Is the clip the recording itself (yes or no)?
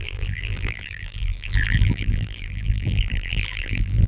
no